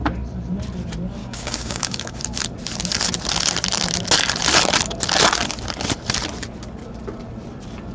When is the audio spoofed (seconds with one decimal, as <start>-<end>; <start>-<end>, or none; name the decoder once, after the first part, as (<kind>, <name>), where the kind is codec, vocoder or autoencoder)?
1.2-2.2 (codec, DAC)